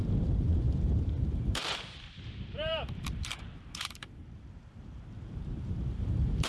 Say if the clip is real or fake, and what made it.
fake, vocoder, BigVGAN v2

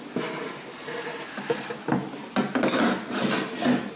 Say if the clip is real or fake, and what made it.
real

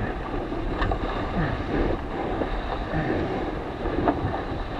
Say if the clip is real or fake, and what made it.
fake, vocoder, BigVGAN v2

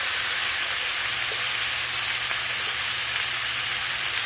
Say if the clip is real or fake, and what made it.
fake, vocoder, BigVGAN v2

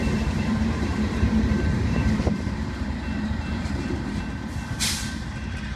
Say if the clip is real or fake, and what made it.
fake, vocoder, BigVGAN v2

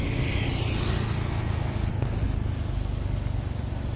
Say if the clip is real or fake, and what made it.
real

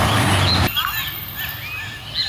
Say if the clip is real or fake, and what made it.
real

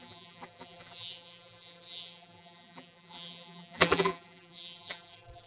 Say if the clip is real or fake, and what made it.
fake, vocoder, BigVGAN v2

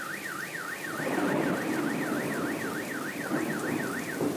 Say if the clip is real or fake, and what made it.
fake, vocoder, BigVGAN v2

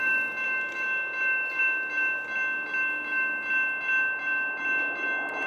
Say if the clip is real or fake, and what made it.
real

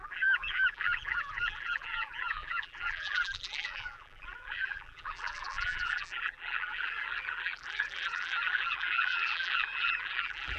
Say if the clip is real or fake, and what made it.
fake, vocoder, BigVGAN v2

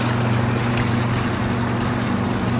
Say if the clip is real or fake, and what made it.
real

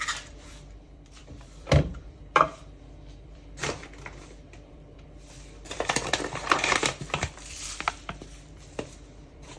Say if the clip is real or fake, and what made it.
fake, vocoder, BigVGAN v2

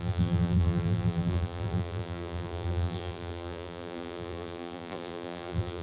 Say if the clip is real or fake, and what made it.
fake, vocoder, BigVGAN v2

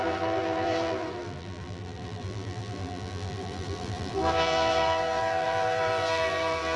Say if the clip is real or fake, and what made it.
fake, vocoder, BigVGAN v2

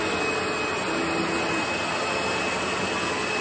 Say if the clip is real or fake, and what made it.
real